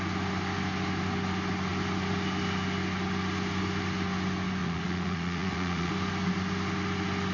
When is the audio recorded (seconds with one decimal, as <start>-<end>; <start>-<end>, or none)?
0.0-4.6; 5.9-7.3